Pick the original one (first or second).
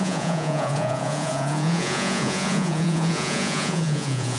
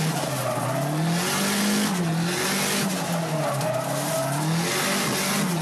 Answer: second